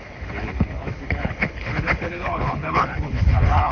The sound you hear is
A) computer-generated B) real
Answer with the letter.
A